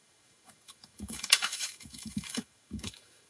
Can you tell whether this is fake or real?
fake